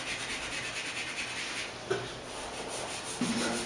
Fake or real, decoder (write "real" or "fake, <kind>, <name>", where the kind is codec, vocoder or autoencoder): real